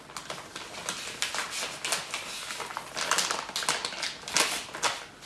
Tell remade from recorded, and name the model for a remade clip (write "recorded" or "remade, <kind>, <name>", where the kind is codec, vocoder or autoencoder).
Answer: recorded